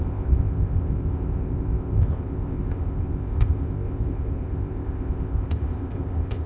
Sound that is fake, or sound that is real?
fake